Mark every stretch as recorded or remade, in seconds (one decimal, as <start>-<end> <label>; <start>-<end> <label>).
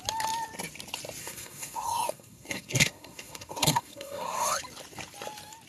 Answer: 0.0-1.2 recorded; 1.2-4.6 remade; 4.6-5.7 recorded